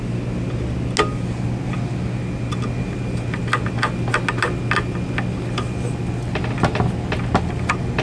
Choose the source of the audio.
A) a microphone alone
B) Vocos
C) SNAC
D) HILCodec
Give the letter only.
A